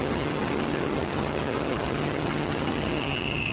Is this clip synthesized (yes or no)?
yes